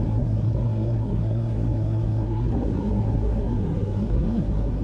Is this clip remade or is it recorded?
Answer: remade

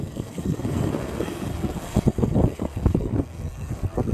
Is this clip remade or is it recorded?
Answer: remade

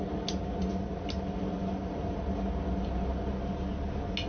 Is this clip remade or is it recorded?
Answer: recorded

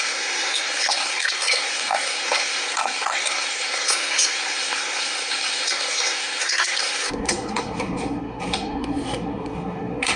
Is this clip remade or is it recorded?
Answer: remade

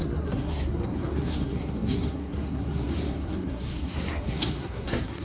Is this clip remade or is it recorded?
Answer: remade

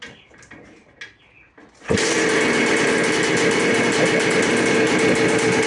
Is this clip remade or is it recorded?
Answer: recorded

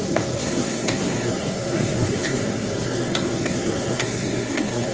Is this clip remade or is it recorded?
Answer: remade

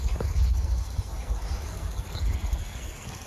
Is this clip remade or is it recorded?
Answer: remade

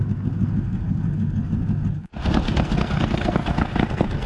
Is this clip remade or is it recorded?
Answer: remade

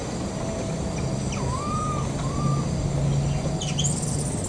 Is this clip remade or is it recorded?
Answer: recorded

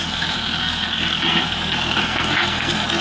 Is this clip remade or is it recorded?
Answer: remade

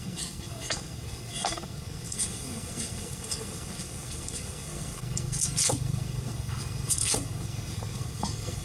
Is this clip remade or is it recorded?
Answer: remade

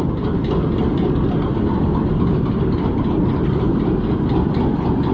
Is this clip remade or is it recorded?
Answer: recorded